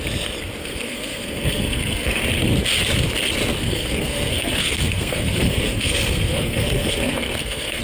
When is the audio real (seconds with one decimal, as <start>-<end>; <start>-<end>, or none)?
0.0-0.6; 2.2-3.6